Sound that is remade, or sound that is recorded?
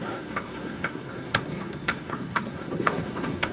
remade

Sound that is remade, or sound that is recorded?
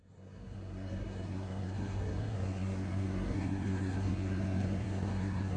remade